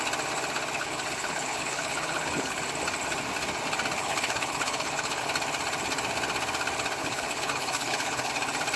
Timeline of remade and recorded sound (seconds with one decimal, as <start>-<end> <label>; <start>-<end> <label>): 0.0-0.8 recorded; 0.8-2.6 remade; 2.6-4.0 recorded; 4.0-5.3 remade; 5.3-7.0 recorded; 7.0-8.3 remade; 8.3-8.8 recorded